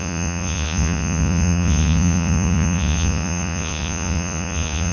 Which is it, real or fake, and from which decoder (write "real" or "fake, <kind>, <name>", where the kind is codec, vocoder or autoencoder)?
fake, vocoder, Vocos